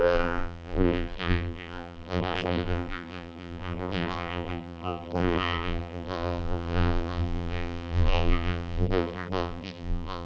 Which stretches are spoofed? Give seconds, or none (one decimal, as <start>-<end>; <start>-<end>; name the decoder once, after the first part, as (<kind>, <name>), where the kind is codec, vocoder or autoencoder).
0.0-10.2 (vocoder, BigVGAN v2)